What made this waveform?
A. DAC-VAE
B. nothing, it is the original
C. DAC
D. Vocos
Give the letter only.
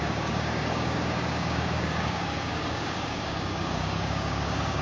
C